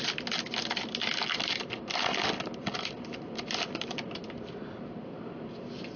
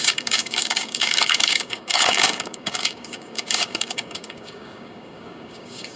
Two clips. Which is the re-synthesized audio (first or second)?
second